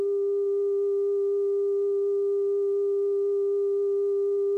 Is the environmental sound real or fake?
real